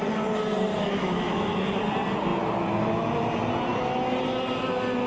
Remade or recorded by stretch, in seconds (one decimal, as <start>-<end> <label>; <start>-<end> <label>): 0.0-0.7 recorded; 0.7-1.8 remade; 1.8-5.1 recorded